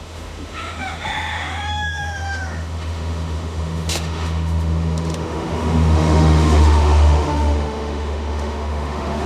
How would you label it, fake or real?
fake